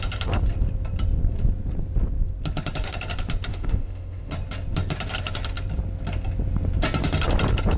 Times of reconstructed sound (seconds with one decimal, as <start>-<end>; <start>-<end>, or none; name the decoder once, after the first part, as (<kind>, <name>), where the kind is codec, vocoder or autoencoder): 3.5-4.3 (autoencoder, DAC-VAE)